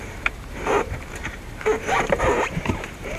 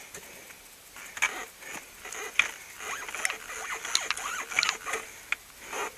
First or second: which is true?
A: second